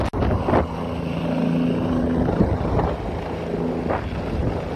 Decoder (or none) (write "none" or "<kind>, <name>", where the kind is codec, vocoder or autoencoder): none